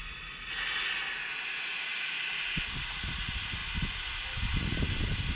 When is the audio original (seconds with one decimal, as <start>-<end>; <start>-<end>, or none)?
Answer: 0.0-5.4